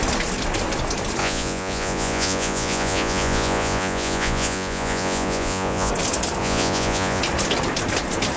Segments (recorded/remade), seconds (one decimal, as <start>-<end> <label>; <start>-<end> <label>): 0.0-1.2 recorded; 1.2-5.9 remade; 5.9-6.4 recorded; 6.4-7.2 remade; 7.2-8.4 recorded